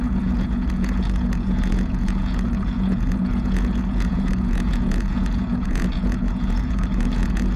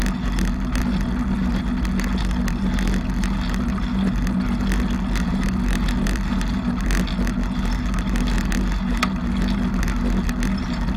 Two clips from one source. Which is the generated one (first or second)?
first